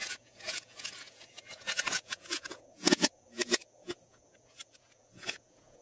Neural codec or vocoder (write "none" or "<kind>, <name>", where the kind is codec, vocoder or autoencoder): vocoder, Vocos